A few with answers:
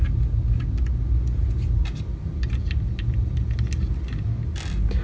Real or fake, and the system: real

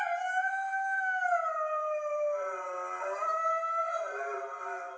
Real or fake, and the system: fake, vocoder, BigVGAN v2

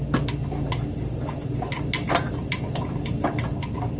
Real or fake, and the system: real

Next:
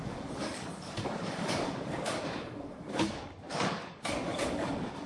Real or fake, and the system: fake, codec, DAC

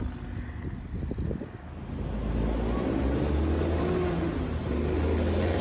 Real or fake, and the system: real